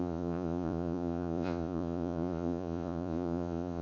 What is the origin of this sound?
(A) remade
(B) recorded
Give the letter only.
A